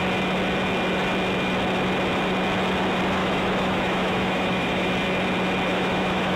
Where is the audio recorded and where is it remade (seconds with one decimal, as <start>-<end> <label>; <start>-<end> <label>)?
0.0-3.2 recorded; 3.2-4.9 remade; 4.9-5.7 recorded; 5.7-6.4 remade